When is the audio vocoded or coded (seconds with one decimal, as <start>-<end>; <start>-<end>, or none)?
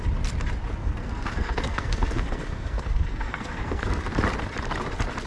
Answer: 0.8-4.0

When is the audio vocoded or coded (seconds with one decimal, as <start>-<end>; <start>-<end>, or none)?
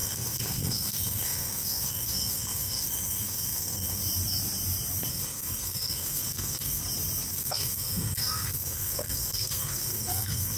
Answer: 0.0-4.0; 5.1-6.8; 7.3-10.6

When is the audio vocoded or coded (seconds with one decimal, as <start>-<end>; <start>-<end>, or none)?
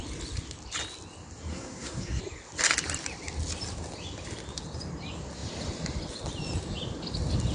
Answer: 1.5-2.2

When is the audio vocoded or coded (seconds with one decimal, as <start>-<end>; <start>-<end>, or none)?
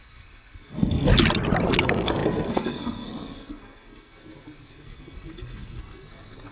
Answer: 0.0-1.1; 1.8-6.5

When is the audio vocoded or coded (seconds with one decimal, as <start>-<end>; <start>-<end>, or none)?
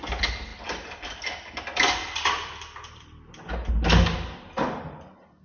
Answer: none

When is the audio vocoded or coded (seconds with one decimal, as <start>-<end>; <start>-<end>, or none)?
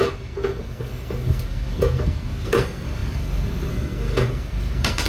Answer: 0.0-5.1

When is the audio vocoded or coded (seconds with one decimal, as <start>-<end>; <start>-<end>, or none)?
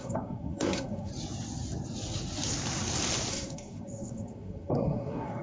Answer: 0.0-1.1; 3.3-5.4